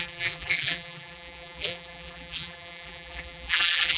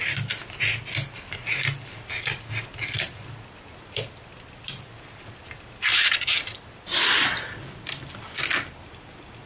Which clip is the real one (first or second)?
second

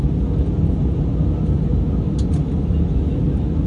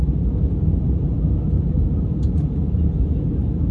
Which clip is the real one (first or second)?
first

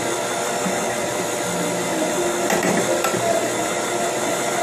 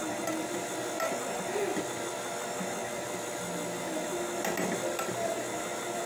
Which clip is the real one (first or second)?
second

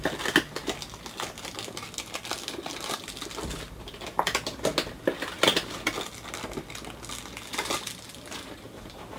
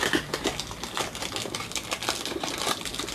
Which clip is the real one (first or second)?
first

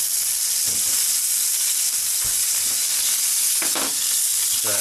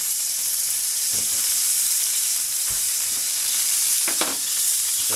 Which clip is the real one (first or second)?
first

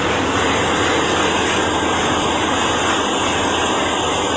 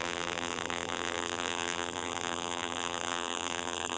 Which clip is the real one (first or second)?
first